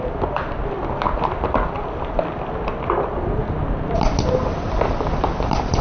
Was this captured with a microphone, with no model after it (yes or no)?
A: yes